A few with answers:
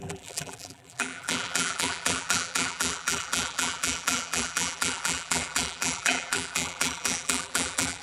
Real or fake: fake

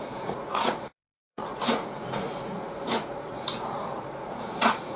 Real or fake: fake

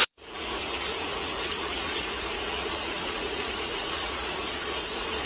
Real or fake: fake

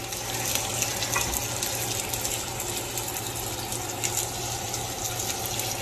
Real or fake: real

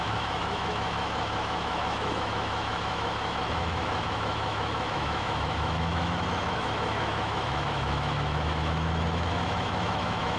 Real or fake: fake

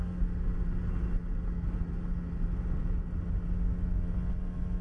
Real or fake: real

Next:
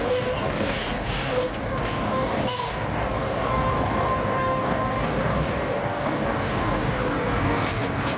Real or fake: fake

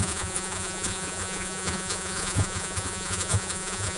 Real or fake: fake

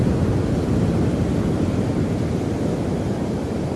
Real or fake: real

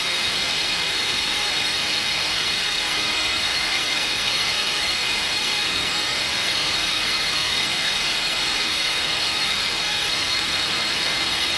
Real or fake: fake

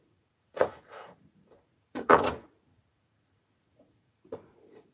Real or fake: fake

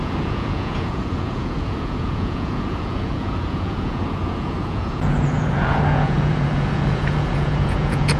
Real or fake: fake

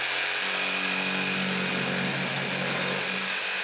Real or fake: real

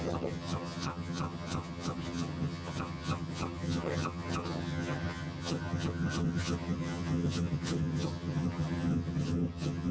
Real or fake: fake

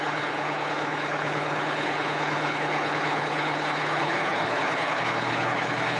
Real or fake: fake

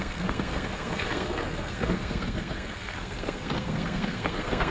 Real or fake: fake